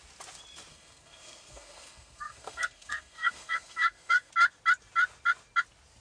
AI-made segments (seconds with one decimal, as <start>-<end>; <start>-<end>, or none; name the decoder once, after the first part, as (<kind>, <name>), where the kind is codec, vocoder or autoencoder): 0.7-4.3 (codec, SNAC)